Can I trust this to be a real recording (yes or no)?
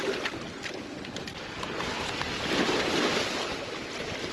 yes